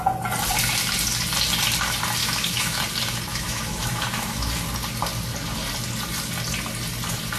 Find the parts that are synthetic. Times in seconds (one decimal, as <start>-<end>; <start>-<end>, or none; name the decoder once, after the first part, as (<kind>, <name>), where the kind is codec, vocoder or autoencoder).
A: 2.2-2.8 (autoencoder, DAC-VAE); 3.3-4.5